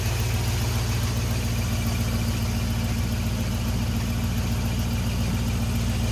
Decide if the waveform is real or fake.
real